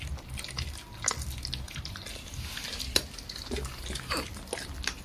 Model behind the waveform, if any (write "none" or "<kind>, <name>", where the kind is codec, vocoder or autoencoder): none